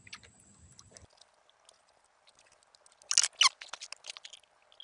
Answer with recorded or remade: recorded